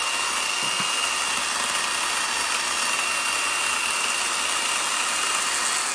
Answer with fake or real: real